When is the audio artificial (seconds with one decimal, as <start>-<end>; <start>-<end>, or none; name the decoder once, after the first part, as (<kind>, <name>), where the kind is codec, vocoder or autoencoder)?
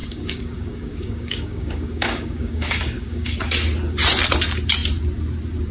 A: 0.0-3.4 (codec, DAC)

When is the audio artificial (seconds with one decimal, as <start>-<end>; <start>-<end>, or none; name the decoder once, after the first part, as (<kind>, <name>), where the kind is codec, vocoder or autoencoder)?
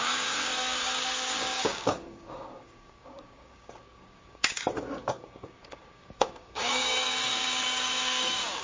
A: 0.0-8.6 (codec, DAC)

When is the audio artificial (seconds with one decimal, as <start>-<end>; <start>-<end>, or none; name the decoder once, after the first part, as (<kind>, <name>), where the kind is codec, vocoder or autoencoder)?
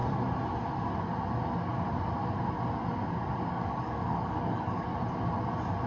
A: 3.5-4.9 (codec, DAC)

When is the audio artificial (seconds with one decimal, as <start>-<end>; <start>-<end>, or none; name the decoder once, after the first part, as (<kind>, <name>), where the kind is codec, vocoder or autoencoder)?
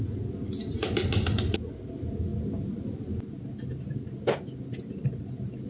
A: none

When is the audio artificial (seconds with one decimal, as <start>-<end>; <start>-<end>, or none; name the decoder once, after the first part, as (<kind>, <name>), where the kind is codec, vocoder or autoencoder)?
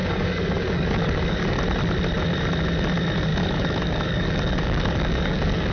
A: 0.0-1.6 (codec, DAC); 3.3-5.7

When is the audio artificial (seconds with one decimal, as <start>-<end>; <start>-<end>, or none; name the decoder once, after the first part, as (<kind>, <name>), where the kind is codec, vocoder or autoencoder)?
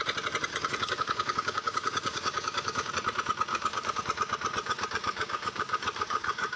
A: 0.5-2.9 (codec, DAC); 3.5-4.0; 4.6-6.6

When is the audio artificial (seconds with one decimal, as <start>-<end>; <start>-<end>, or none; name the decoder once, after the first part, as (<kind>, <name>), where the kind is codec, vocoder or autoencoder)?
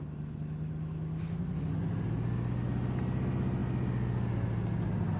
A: none